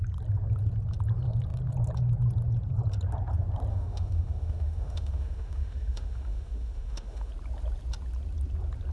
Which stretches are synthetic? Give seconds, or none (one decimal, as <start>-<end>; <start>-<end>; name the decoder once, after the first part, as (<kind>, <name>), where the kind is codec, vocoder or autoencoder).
3.7-7.3 (autoencoder, DAC-VAE)